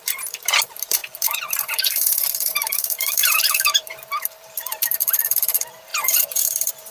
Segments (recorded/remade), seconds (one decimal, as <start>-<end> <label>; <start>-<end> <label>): 0.0-6.9 remade